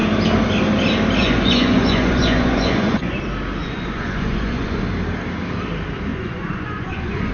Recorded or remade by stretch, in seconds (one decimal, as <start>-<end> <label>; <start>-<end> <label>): 0.0-1.2 recorded; 1.2-3.2 remade; 3.2-3.6 recorded; 3.6-4.8 remade; 4.8-6.1 recorded; 6.1-7.3 remade